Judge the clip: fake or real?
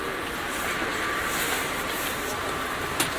real